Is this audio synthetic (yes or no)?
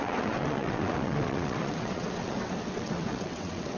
yes